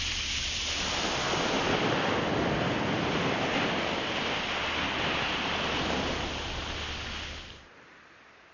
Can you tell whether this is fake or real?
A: real